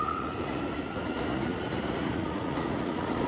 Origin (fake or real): fake